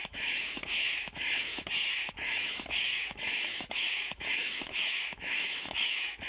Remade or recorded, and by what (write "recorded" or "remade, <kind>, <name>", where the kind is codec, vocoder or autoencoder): remade, autoencoder, DAC-VAE